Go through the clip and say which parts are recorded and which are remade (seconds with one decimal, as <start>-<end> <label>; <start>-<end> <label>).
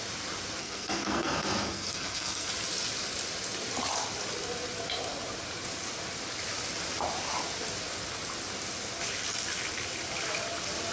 0.0-0.6 recorded; 0.6-2.5 remade; 2.5-10.9 recorded